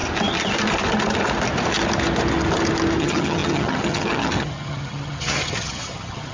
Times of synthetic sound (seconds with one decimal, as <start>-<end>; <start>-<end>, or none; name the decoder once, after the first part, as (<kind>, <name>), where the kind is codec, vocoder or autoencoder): 3.0-6.3 (vocoder, HiFi-GAN)